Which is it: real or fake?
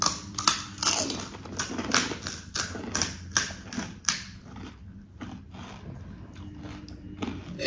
real